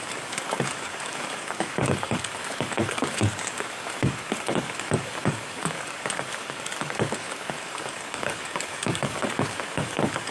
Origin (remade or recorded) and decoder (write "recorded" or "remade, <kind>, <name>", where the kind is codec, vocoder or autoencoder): remade, codec, DAC